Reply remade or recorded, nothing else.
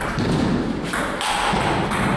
recorded